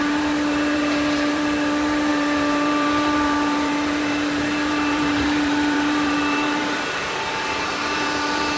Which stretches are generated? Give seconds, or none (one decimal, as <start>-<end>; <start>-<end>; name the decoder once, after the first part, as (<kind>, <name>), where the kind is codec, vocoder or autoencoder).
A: 0.0-8.6 (vocoder, BigVGAN v2)

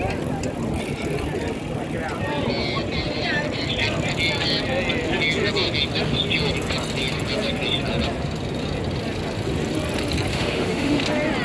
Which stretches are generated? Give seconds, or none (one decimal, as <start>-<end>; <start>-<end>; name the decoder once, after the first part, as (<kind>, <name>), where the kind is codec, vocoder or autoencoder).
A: 10.3-11.0 (autoencoder, DAC-VAE)

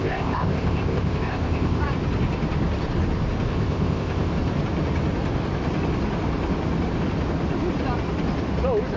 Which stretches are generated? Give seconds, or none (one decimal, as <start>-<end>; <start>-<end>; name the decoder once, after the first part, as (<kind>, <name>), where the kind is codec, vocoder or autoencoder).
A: 0.0-1.8 (codec, ZipCodec); 3.5-4.3

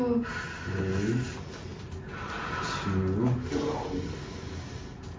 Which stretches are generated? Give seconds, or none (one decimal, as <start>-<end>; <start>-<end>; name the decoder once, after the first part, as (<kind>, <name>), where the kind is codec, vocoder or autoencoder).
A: none